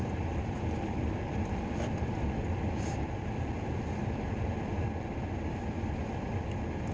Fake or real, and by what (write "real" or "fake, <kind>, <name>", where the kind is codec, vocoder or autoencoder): real